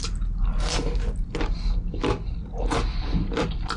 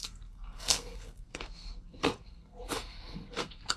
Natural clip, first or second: first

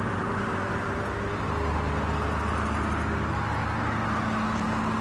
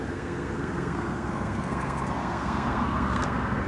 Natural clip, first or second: first